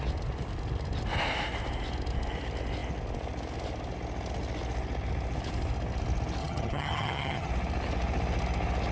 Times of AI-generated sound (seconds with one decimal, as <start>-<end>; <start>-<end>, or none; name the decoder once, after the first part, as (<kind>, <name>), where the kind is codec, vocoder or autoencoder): 6.4-7.5 (vocoder, HiFi-GAN)